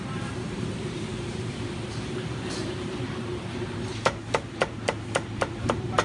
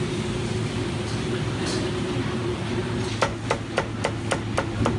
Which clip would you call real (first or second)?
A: second